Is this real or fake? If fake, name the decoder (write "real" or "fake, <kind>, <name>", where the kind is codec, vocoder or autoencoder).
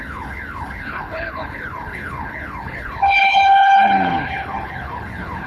fake, codec, HILCodec